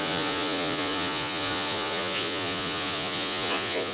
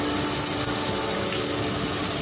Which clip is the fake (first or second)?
first